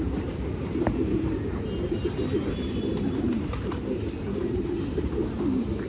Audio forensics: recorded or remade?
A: remade